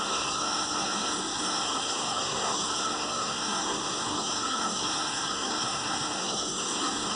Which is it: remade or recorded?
remade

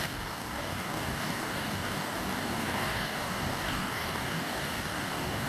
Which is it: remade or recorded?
remade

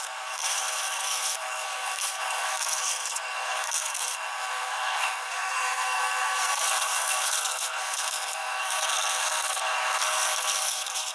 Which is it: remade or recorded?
remade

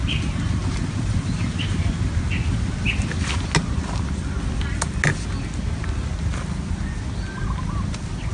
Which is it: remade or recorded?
recorded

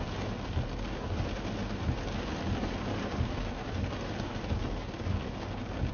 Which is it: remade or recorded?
recorded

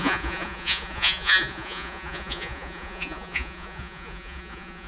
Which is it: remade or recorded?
remade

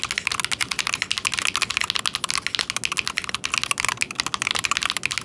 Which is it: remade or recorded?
recorded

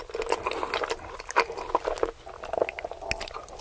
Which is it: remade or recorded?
recorded